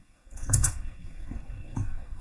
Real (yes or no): no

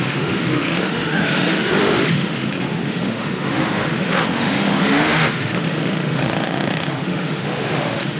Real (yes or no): no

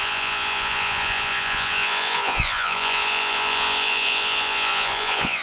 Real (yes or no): no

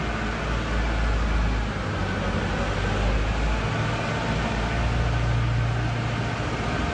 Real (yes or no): yes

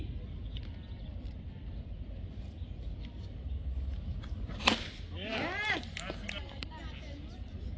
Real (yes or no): yes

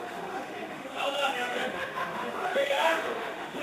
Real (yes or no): no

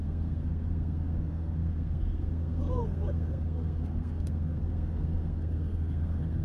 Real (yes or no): no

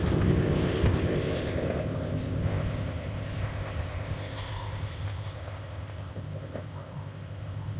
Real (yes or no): no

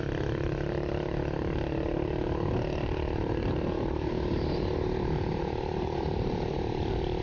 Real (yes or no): no